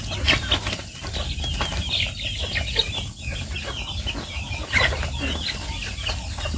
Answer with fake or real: real